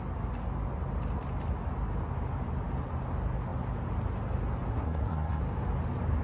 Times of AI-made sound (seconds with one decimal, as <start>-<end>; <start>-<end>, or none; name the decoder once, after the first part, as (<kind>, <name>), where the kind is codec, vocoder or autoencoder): 4.7-5.4 (codec, SNAC)